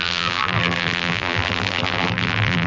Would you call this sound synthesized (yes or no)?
yes